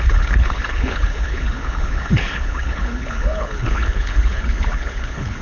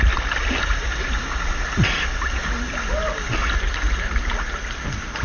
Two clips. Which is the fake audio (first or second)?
first